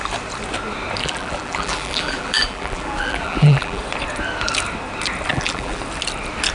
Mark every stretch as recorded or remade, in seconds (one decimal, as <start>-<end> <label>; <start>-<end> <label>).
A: 0.0-1.0 recorded; 1.0-3.8 remade; 3.8-5.3 recorded; 5.3-5.8 remade; 5.8-6.5 recorded